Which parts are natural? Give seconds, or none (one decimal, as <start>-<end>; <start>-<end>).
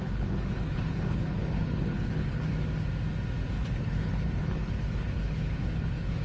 2.5-3.5